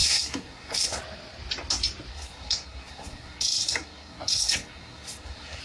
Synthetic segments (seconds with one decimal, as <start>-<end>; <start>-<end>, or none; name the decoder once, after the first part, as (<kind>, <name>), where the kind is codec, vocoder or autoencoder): 0.0-1.0 (codec, SNAC); 2.1-5.6